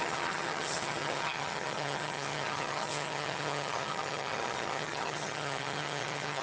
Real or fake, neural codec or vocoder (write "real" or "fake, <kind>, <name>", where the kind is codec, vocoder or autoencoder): fake, vocoder, HiFi-GAN